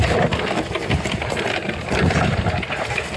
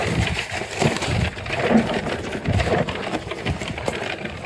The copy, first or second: second